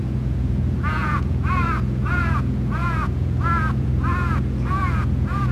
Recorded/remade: remade